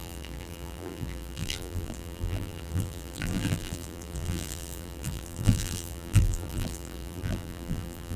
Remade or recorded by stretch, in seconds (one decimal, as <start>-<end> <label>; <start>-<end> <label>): 0.0-8.2 remade